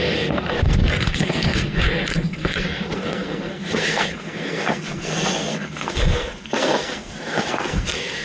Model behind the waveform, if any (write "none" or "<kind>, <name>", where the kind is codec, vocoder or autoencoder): codec, SNAC